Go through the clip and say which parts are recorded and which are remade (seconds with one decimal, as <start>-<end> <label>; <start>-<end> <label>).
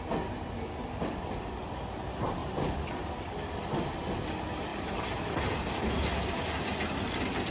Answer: 0.0-7.5 recorded